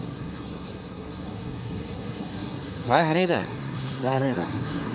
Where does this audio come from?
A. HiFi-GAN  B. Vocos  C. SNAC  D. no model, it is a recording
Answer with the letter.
C